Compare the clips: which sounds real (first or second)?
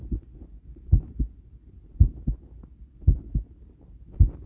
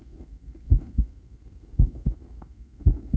first